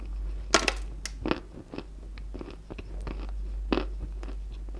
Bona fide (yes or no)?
yes